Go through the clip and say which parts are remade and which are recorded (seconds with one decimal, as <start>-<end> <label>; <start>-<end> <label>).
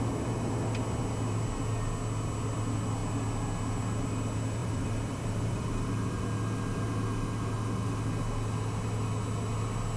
0.0-4.6 recorded; 4.6-6.2 remade; 6.2-10.0 recorded